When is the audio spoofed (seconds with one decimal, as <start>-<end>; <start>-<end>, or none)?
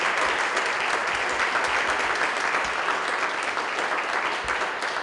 none